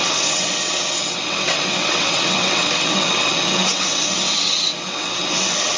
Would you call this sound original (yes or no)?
no